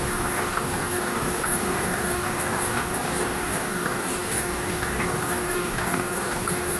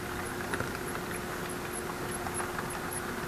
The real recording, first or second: second